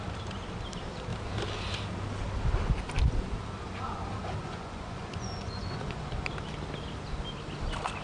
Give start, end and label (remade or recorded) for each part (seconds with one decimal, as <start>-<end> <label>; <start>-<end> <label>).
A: 0.0-4.4 recorded; 4.4-6.3 remade; 6.3-8.0 recorded